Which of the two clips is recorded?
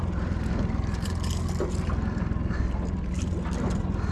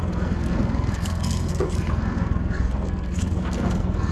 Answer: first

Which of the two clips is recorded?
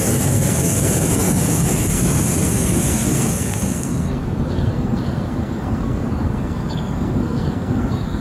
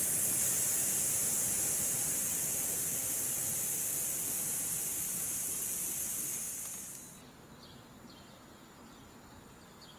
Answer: second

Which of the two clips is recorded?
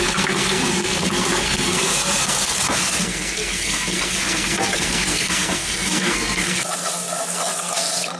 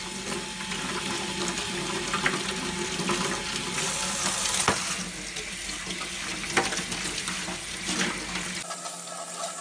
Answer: second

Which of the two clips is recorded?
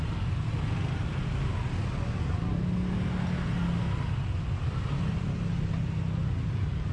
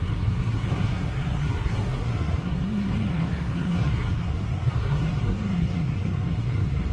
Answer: first